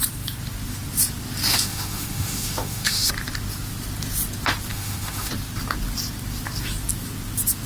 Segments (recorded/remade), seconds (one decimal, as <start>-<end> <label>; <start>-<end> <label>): 0.0-1.5 recorded; 1.5-3.1 remade; 3.1-4.7 recorded; 4.7-5.3 remade; 5.3-7.7 recorded